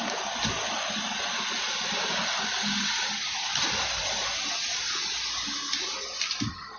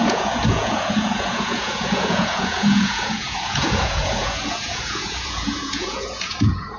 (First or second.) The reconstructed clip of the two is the second